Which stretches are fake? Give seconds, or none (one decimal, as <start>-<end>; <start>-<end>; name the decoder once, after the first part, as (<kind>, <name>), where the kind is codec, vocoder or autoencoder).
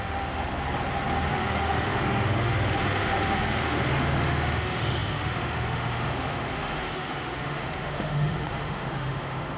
0.0-0.5 (autoencoder, DAC-VAE); 1.3-9.6